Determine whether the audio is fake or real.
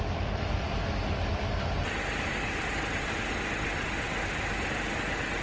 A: real